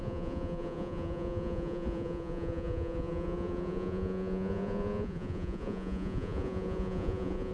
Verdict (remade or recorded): remade